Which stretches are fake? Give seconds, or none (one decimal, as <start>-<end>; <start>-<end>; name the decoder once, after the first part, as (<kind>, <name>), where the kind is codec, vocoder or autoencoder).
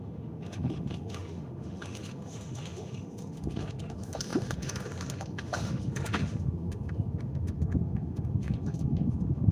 0.0-9.5 (autoencoder, DAC-VAE)